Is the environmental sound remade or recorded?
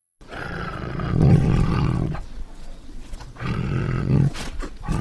remade